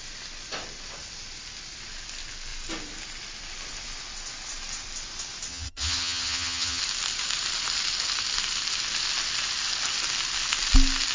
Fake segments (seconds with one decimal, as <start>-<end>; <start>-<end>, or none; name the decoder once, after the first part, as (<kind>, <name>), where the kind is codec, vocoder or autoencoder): 5.5-6.8 (vocoder, HiFi-GAN)